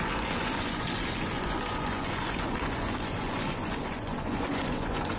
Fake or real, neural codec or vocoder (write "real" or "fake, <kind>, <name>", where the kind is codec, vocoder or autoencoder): fake, vocoder, Vocos